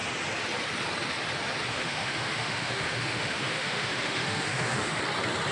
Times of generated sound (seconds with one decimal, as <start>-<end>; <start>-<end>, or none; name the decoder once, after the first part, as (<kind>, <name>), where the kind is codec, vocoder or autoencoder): 1.7-5.0 (autoencoder, DAC-VAE)